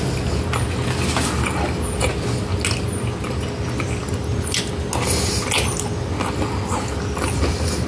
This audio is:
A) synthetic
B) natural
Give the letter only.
B